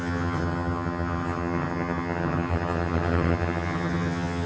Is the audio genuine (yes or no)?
no